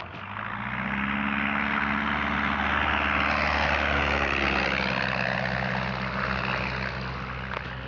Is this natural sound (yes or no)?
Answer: yes